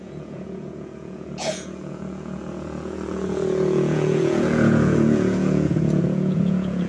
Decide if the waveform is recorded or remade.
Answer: remade